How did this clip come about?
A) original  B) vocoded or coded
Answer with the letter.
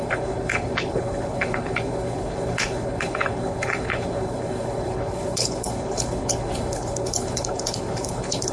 B